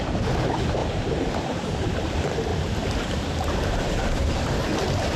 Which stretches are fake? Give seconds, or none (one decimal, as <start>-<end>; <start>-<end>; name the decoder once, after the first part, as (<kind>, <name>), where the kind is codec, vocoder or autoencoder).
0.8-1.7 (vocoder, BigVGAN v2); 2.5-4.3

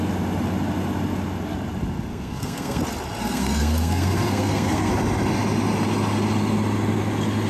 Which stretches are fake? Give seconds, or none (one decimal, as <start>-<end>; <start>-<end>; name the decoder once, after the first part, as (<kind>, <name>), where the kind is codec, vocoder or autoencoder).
2.1-2.8 (codec, SNAC); 3.2-4.9

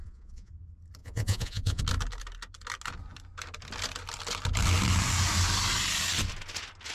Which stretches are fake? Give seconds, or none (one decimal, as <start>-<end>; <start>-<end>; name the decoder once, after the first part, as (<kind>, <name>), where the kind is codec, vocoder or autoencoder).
0.0-0.5 (vocoder, Vocos); 1.0-1.8